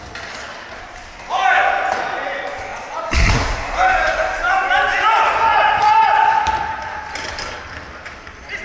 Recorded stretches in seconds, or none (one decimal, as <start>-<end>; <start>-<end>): 0.0-8.6